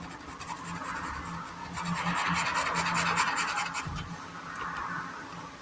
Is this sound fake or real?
real